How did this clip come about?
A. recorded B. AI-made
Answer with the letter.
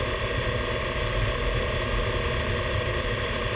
A